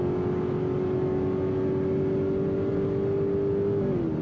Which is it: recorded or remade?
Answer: recorded